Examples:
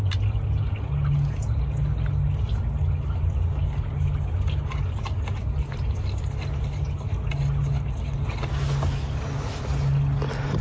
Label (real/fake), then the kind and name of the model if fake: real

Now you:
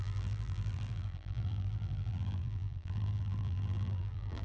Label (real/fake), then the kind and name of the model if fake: fake, vocoder, BigVGAN v2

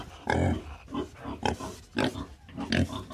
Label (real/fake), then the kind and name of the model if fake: real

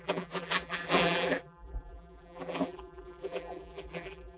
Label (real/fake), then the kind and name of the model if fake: fake, vocoder, BigVGAN v2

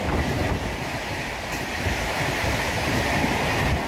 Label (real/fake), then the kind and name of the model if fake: fake, vocoder, BigVGAN v2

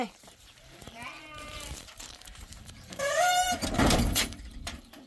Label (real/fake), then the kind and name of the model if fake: fake, vocoder, BigVGAN v2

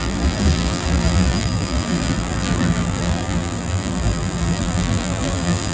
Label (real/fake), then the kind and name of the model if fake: fake, vocoder, BigVGAN v2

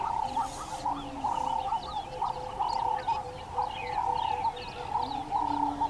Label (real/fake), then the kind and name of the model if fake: real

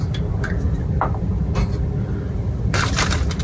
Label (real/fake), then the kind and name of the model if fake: fake, vocoder, BigVGAN v2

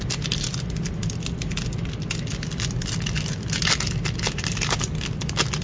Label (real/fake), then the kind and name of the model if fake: real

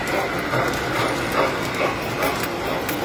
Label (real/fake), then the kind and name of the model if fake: real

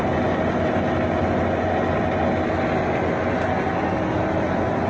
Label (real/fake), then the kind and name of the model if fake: real